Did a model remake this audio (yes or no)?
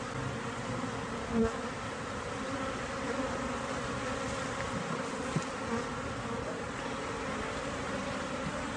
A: no